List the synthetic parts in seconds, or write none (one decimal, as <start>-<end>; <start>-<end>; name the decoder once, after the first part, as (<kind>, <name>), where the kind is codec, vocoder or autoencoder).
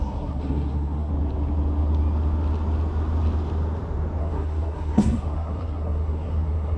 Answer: 0.0-1.1 (codec, SNAC); 4.2-6.8